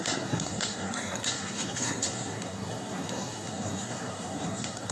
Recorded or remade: remade